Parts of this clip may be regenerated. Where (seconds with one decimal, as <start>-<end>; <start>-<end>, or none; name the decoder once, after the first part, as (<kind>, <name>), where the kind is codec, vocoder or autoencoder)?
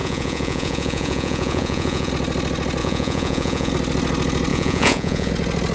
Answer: 0.0-2.1 (vocoder, Vocos); 2.8-3.7; 4.5-5.3